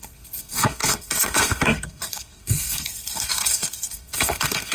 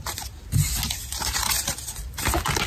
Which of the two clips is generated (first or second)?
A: first